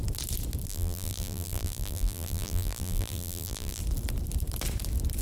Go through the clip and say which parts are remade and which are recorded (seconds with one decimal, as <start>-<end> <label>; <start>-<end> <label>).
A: 0.0-0.7 recorded; 0.7-3.8 remade; 3.8-5.2 recorded